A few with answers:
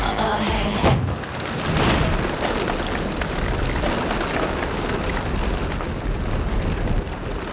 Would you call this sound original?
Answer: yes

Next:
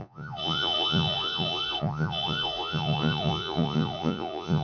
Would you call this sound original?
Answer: no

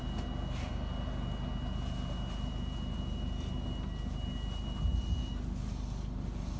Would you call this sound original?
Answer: yes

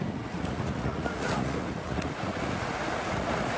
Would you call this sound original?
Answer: no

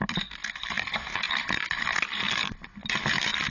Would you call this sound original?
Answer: yes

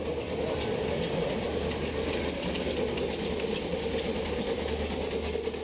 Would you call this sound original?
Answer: yes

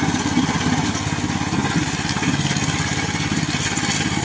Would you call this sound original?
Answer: yes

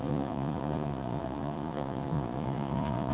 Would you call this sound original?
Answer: no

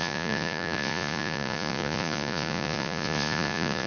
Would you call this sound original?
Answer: no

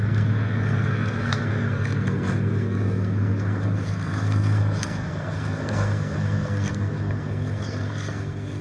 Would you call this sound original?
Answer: no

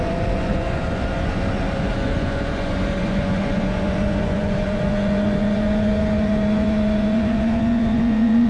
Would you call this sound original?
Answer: no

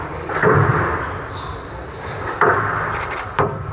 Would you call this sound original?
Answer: no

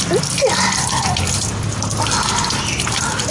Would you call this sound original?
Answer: yes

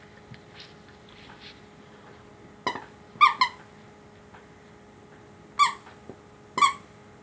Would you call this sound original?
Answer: yes